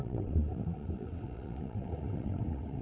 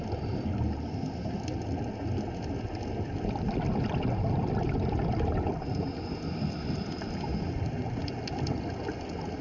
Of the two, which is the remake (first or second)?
first